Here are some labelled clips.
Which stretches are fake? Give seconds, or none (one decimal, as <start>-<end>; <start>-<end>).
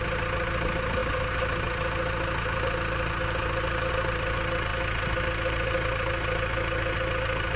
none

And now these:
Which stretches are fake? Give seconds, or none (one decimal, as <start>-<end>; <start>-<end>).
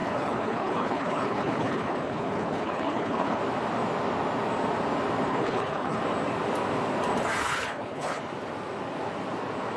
0.0-3.4; 5.3-6.0; 7.4-8.2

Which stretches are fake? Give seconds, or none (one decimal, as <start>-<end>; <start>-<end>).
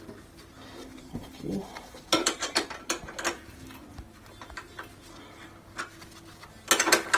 0.9-2.7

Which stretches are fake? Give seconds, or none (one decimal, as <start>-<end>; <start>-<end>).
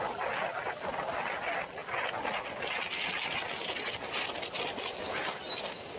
none